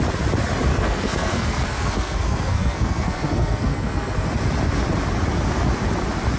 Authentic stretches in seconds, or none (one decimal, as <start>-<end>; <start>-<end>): 0.0-0.7; 4.3-6.4